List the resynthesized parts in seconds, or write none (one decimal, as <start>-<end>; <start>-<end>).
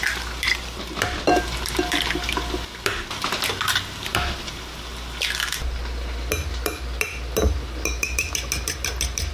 none